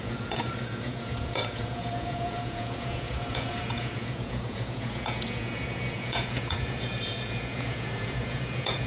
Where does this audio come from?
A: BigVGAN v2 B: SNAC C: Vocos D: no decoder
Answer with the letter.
C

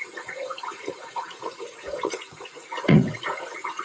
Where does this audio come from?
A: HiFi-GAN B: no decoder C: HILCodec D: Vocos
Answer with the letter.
D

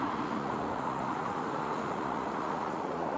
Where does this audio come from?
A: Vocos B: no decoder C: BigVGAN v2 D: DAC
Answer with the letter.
A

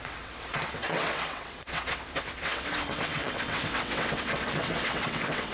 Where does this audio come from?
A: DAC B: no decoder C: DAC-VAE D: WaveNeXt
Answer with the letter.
D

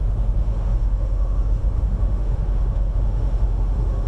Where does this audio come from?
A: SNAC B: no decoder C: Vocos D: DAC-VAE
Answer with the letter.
D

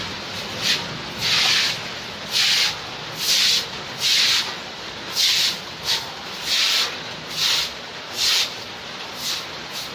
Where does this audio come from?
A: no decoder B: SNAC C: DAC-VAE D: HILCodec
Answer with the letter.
A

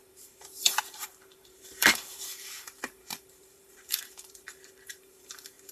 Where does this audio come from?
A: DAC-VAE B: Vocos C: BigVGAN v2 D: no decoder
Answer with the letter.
C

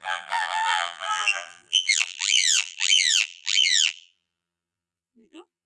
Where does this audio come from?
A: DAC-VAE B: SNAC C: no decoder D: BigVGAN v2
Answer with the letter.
D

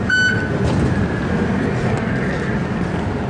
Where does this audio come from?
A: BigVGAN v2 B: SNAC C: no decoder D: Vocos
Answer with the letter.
C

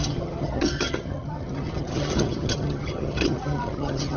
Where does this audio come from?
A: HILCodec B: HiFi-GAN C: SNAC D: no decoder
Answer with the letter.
B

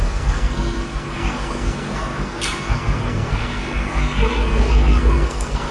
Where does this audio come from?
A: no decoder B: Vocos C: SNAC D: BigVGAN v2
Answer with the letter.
C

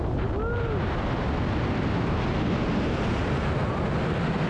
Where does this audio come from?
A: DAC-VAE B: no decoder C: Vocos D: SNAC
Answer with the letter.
B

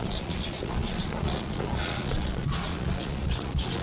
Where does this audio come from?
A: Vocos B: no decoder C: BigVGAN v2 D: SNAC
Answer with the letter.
A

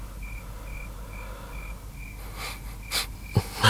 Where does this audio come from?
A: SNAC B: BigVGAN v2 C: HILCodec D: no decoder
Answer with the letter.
D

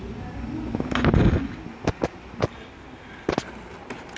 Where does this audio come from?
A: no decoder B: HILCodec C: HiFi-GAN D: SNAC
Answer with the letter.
A